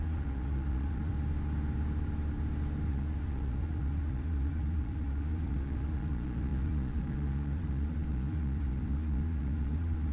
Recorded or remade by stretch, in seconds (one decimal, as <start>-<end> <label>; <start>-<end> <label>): 0.0-1.1 remade; 1.1-2.9 recorded; 2.9-10.1 remade